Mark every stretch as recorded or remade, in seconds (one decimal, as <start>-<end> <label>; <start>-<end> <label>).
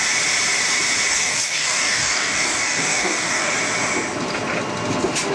0.0-1.1 recorded; 1.1-3.5 remade; 3.5-5.3 recorded